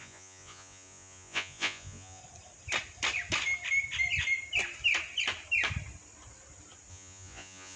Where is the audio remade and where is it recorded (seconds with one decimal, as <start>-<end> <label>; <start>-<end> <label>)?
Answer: 0.0-2.2 remade; 2.2-6.9 recorded; 6.9-7.8 remade